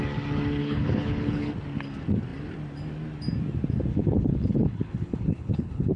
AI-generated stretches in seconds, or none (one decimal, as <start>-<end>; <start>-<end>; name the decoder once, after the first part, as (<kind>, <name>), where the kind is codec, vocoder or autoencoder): 0.6-1.5 (codec, HILCodec); 3.9-6.0